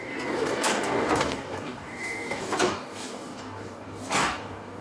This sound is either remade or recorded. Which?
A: remade